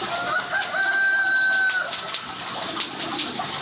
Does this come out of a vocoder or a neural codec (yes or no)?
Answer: no